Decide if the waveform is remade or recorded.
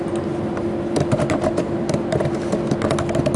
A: recorded